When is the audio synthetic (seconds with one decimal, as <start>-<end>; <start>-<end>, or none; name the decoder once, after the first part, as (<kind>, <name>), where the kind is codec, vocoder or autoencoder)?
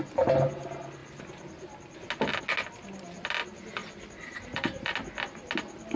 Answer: 3.8-4.9 (vocoder, BigVGAN v2)